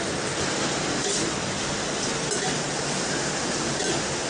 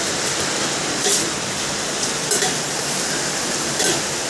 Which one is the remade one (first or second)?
second